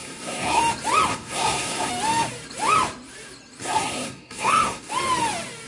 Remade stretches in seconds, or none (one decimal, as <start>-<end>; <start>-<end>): 0.0-0.6; 1.1-1.9; 3.6-4.9